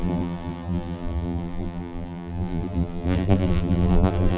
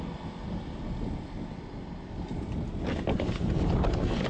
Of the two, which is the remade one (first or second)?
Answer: first